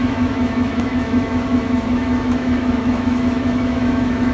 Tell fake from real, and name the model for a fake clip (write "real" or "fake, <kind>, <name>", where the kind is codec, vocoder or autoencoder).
fake, autoencoder, DAC-VAE